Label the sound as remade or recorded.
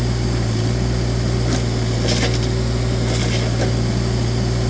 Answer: recorded